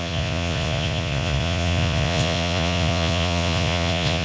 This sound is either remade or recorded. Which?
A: remade